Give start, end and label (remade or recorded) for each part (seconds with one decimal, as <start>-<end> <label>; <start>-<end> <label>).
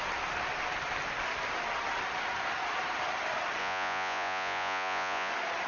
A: 0.0-3.6 recorded; 3.6-5.3 remade; 5.3-5.7 recorded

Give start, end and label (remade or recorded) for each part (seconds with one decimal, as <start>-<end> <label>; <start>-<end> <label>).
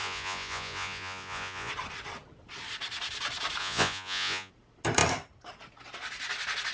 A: 0.0-1.7 remade; 1.7-3.6 recorded; 3.6-4.5 remade; 4.5-6.7 recorded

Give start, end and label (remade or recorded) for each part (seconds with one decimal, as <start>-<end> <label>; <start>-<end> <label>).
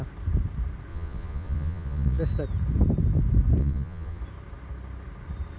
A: 0.0-0.9 recorded; 0.9-2.2 remade; 2.2-3.6 recorded; 3.6-4.2 remade; 4.2-5.6 recorded